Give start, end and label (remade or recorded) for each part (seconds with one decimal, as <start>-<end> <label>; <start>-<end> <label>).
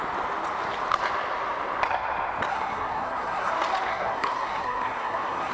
0.0-2.5 recorded; 2.5-3.5 remade; 3.5-3.9 recorded; 3.9-5.5 remade